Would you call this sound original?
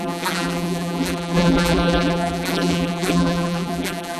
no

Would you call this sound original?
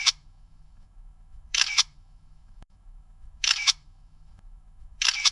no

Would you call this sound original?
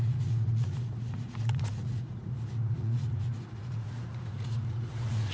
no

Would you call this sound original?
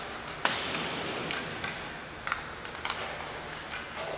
yes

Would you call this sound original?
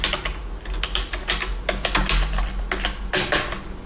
yes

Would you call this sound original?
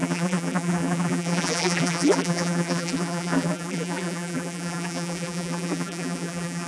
no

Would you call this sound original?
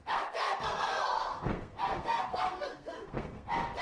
no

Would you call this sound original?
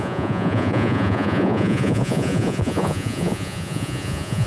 no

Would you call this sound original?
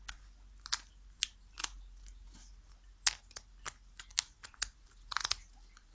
yes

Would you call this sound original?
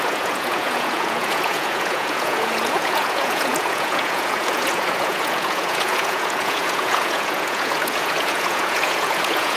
no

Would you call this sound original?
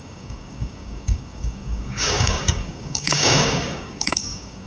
no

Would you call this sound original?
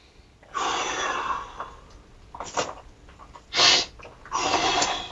yes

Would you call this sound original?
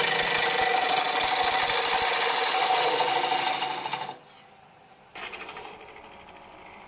yes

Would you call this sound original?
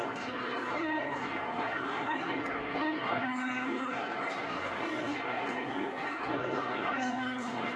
no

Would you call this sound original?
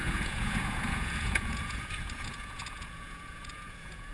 no